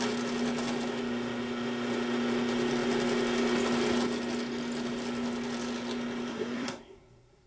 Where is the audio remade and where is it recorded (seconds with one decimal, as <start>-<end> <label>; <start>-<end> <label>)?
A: 0.0-6.3 recorded; 6.3-7.5 remade